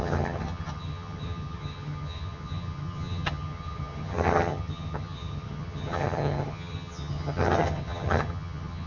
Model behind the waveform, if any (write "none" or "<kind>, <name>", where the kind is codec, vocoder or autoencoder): vocoder, HiFi-GAN